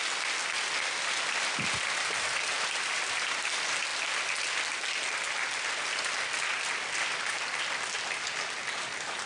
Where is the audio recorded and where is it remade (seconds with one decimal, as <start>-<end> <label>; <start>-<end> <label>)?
0.0-9.3 recorded

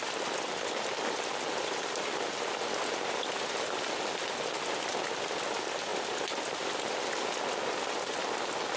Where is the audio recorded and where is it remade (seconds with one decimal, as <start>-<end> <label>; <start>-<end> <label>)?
0.0-8.8 recorded